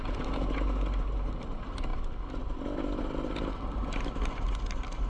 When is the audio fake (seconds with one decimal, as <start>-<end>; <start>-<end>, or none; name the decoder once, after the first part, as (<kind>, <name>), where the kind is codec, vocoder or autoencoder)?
none